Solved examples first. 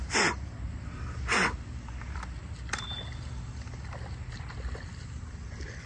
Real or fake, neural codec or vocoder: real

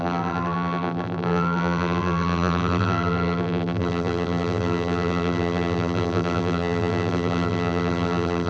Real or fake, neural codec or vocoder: fake, vocoder, BigVGAN v2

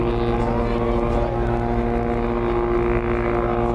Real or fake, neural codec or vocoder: real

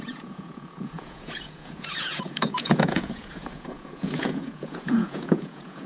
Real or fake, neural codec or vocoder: fake, vocoder, Vocos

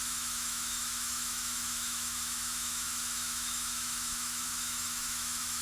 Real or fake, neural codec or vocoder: fake, autoencoder, DAC-VAE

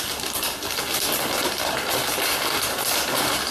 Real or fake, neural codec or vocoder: real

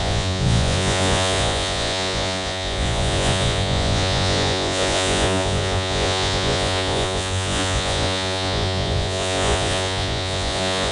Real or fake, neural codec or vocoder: fake, vocoder, Vocos